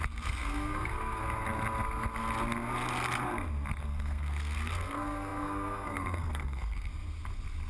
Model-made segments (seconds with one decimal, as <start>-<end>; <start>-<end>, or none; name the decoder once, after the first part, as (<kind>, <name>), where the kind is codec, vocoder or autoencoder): 0.0-1.2 (codec, SNAC); 3.8-6.9